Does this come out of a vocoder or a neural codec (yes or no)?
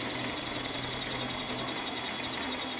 no